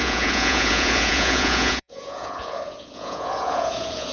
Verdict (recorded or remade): remade